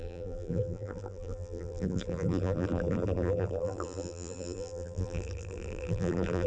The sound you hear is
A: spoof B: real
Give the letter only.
A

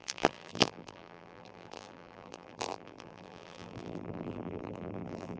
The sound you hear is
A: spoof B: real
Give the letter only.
A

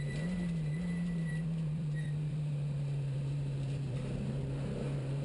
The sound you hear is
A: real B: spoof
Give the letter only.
B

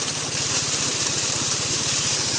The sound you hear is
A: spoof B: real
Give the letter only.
A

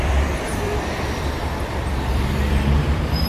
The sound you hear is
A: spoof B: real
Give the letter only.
A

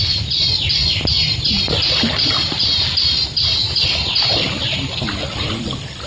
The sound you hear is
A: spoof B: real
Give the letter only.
A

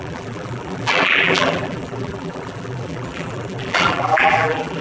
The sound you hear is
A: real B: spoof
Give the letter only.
B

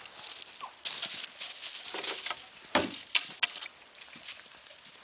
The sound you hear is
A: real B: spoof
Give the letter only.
A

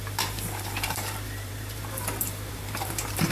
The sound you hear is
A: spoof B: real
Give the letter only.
A